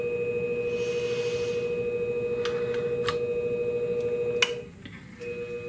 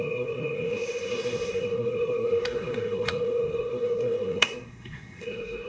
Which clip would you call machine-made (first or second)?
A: second